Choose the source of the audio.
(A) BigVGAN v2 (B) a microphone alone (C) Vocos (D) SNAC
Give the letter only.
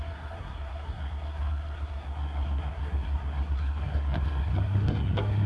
D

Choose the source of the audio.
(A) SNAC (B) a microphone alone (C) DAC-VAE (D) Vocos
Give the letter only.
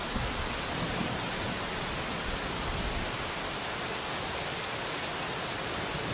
B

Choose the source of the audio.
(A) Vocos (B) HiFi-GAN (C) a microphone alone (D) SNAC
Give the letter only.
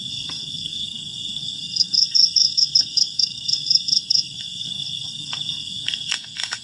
D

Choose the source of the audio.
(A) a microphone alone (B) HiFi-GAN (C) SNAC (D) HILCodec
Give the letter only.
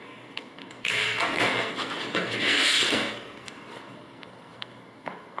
C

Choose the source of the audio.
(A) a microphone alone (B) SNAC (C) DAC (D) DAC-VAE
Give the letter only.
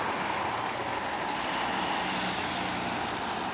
A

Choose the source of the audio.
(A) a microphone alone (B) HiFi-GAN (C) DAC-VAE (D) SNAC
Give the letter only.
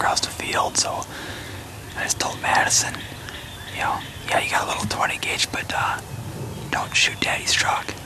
A